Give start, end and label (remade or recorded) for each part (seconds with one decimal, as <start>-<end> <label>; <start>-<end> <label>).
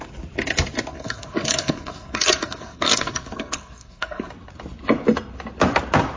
0.0-0.9 recorded; 0.9-4.3 remade; 4.3-6.2 recorded